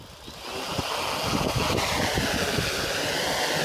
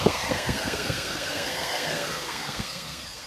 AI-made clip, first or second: second